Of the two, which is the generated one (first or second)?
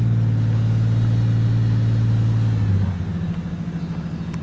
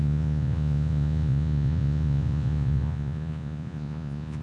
second